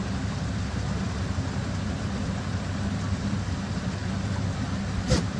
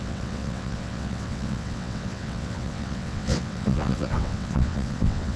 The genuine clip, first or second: first